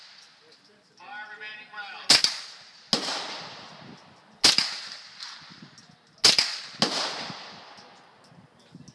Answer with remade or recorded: recorded